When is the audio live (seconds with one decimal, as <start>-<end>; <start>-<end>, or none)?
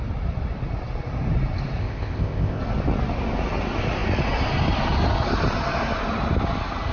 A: 0.0-1.8; 2.6-6.9